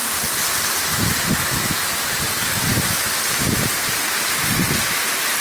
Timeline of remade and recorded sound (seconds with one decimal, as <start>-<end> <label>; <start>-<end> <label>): 0.0-5.4 recorded